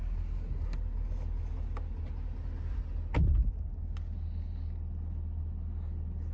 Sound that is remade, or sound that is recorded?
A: recorded